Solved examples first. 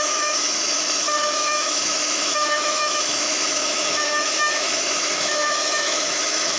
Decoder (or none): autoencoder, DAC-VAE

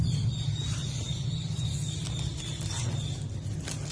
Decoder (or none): none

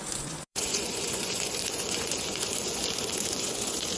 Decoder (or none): vocoder, Vocos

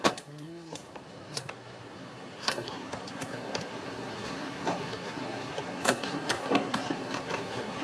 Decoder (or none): codec, SNAC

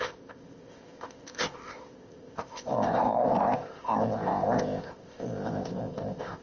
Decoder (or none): codec, ZipCodec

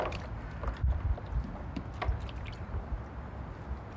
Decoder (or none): none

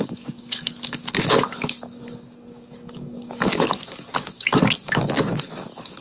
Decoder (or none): codec, DAC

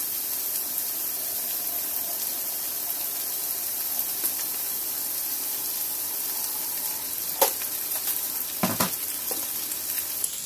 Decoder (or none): none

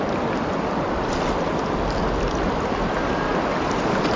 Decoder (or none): none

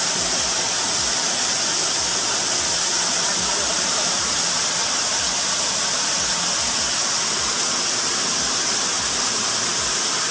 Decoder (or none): none